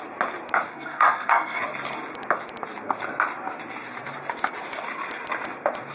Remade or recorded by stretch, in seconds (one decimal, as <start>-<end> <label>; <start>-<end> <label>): 0.0-0.7 recorded; 0.7-1.6 remade; 1.6-5.9 recorded